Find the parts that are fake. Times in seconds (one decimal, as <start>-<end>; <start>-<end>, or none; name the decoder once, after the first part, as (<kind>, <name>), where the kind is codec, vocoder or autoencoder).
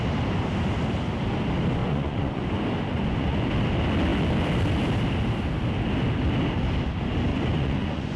1.8-2.5 (vocoder, Vocos); 2.9-3.5; 7.3-8.2